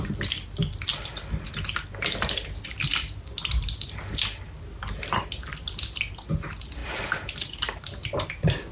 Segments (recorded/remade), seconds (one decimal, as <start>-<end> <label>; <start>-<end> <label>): 0.0-8.7 recorded